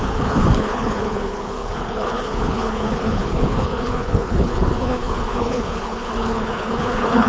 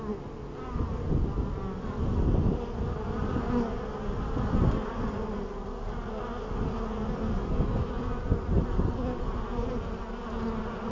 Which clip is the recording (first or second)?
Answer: second